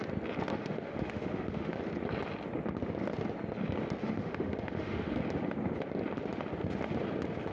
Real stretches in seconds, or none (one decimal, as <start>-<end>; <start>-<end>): 0.0-0.5; 1.8-4.0; 5.2-7.5